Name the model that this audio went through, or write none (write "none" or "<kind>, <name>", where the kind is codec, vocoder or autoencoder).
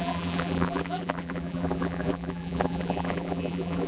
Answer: vocoder, BigVGAN v2